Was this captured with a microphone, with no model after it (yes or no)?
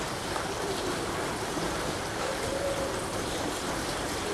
no